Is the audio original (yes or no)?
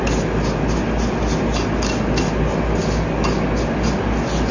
yes